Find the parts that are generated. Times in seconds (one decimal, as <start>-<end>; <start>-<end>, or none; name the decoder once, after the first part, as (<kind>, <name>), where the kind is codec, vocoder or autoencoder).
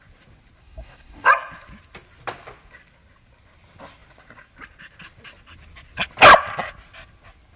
0.6-1.3 (codec, DAC)